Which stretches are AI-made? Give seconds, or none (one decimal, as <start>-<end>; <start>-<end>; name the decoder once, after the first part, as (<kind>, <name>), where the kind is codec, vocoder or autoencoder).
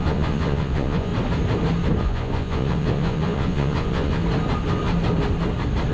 0.0-1.1 (vocoder, Vocos); 2.0-4.2